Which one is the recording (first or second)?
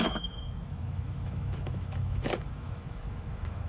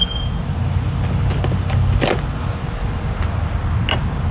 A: second